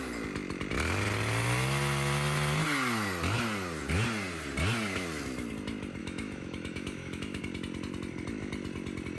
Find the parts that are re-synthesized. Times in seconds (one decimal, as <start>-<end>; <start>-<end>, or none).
6.0-7.4